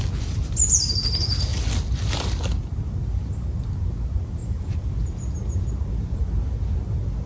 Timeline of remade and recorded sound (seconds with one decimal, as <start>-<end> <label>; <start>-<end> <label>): 0.0-7.3 recorded

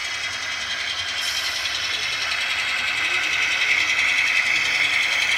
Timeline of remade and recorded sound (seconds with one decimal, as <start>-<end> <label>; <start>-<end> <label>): 0.0-5.4 recorded

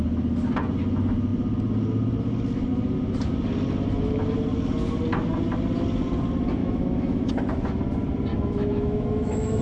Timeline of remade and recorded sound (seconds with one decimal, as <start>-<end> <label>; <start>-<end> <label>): 0.0-6.6 recorded; 6.6-7.3 remade; 7.3-8.3 recorded; 8.3-9.6 remade

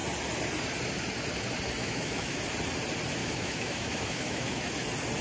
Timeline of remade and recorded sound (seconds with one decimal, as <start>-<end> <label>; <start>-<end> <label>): 0.0-1.8 recorded; 1.8-2.4 remade; 2.4-3.2 recorded; 3.2-4.7 remade; 4.7-5.2 recorded

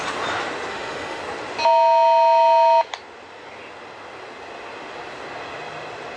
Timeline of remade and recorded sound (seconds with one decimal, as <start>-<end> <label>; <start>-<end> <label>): 0.0-0.7 recorded; 0.7-1.2 remade; 1.2-6.2 recorded